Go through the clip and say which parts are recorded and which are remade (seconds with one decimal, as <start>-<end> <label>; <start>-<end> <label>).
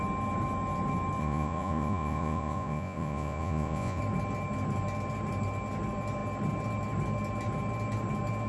0.0-1.2 recorded; 1.2-4.0 remade; 4.0-8.5 recorded